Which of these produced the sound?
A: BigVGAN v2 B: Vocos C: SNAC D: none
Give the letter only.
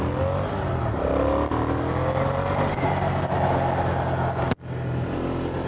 D